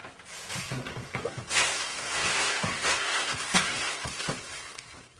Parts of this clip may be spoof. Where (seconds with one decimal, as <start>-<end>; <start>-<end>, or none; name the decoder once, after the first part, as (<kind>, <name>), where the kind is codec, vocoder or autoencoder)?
0.6-5.2 (codec, SNAC)